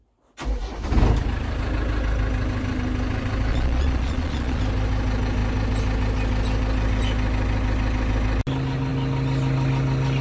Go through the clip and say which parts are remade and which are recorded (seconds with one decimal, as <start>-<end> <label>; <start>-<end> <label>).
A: 0.0-3.5 recorded; 3.5-4.6 remade; 4.6-10.2 recorded